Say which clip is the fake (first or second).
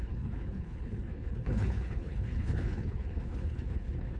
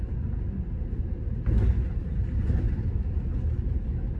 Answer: first